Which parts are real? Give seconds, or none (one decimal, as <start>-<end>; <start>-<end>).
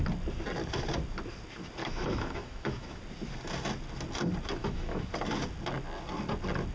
0.0-1.8; 3.0-4.6; 5.1-6.7